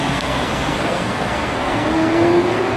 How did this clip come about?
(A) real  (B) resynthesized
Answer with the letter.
B